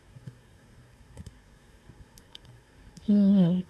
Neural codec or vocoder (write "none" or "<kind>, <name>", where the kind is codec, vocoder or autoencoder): codec, SNAC